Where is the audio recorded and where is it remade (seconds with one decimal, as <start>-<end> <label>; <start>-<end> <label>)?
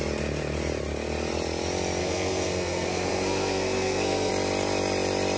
0.0-2.0 recorded; 2.0-4.3 remade; 4.3-5.4 recorded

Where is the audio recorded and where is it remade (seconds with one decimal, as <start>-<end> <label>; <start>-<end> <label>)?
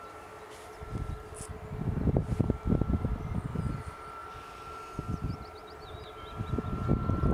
0.0-7.3 recorded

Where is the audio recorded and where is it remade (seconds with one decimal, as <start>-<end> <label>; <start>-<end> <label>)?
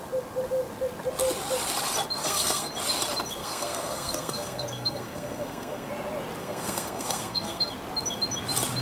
0.0-2.2 recorded; 2.2-2.7 remade; 2.7-3.4 recorded; 3.4-5.9 remade; 5.9-6.4 recorded; 6.4-7.7 remade; 7.7-8.8 recorded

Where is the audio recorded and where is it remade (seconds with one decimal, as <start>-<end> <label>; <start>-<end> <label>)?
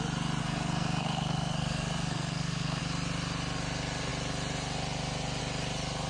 0.0-0.4 recorded; 0.4-2.8 remade; 2.8-6.1 recorded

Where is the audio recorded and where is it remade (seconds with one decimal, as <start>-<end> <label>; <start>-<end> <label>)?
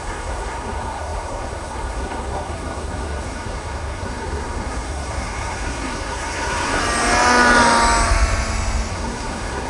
0.0-6.8 remade; 6.8-8.9 recorded; 8.9-9.7 remade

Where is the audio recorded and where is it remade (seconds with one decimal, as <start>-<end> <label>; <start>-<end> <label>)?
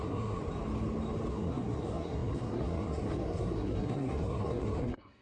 0.0-0.4 remade; 0.4-1.3 recorded; 1.3-5.2 remade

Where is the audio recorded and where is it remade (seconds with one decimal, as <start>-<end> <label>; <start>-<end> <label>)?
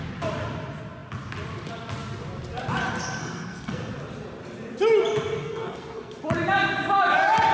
0.0-3.2 recorded; 3.2-3.9 remade; 3.9-5.4 recorded; 5.4-6.2 remade; 6.2-7.5 recorded